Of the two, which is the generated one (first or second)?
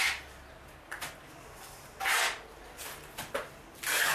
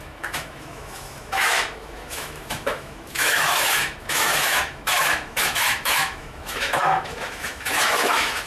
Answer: second